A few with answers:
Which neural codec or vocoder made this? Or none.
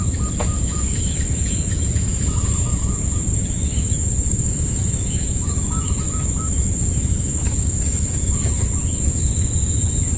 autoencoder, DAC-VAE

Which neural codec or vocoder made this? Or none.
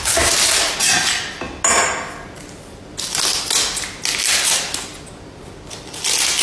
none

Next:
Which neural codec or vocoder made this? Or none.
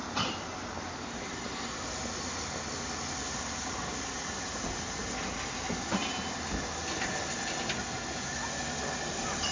none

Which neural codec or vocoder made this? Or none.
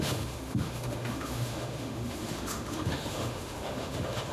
autoencoder, DAC-VAE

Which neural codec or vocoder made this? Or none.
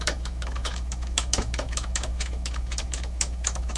autoencoder, DAC-VAE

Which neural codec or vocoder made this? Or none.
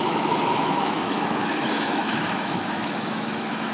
autoencoder, DAC-VAE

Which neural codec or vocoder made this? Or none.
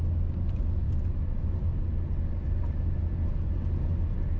none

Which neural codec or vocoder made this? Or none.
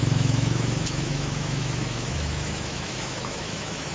autoencoder, DAC-VAE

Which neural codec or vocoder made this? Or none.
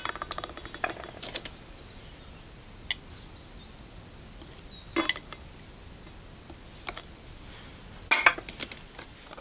none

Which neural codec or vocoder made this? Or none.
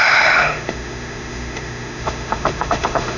autoencoder, DAC-VAE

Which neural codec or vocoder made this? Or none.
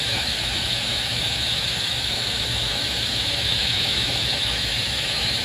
autoencoder, DAC-VAE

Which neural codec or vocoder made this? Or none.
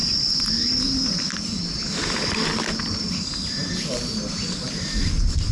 none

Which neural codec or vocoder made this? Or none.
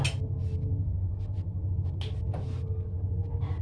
none